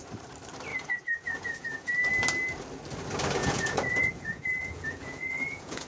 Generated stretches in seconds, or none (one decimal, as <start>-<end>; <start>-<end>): 0.7-1.9; 3.4-5.9